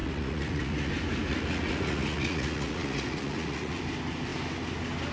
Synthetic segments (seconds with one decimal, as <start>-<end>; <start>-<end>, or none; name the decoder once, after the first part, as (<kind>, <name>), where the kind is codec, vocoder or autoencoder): 0.0-0.9 (vocoder, Vocos); 1.3-3.8